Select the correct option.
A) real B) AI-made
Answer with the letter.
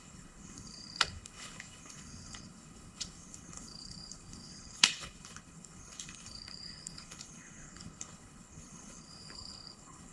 B